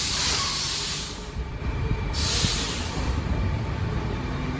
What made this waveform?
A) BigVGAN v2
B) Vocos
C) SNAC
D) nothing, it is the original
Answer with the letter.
A